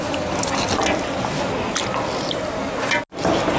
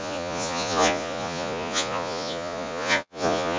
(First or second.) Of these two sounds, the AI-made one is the second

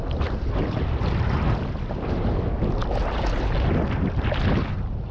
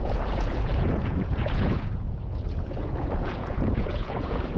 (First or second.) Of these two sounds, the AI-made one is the second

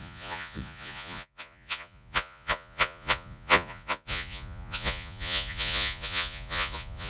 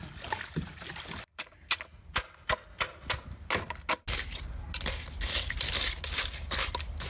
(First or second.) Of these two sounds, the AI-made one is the first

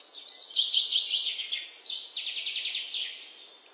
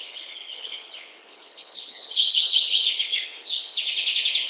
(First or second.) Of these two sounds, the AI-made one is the second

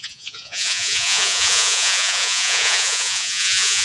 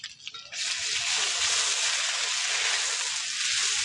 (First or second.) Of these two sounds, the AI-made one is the first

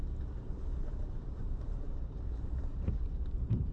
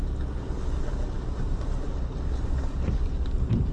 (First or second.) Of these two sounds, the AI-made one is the first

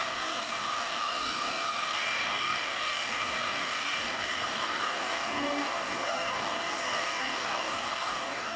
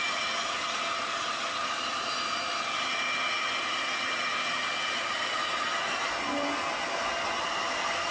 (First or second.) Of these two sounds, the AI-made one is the first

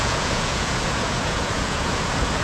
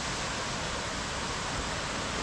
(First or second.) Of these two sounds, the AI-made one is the first